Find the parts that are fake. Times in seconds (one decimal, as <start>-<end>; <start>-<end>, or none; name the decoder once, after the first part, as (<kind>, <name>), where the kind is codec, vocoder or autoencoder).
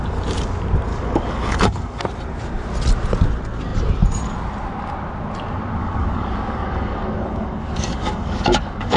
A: 0.9-2.0 (codec, DAC); 5.8-9.0